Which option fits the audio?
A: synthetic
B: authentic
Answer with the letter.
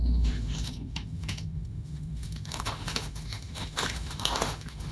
A